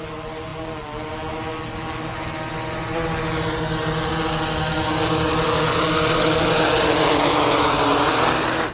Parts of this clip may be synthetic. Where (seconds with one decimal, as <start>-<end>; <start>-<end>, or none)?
none